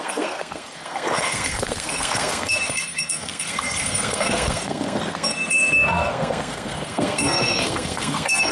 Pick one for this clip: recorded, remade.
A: remade